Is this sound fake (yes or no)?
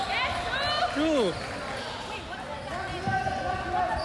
no